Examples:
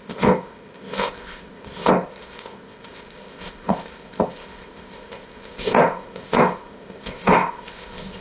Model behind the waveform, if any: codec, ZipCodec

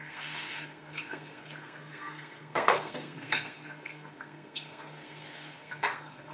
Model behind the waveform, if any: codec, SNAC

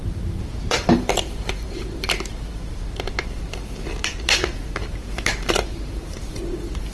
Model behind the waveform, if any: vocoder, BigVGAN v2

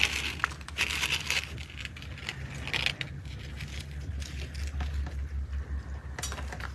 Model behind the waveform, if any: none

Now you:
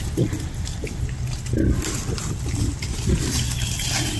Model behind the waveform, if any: none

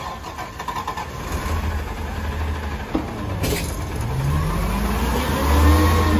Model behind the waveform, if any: none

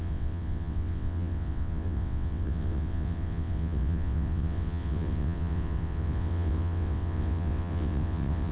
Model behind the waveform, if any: vocoder, WaveNeXt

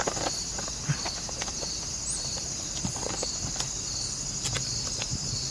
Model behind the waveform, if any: none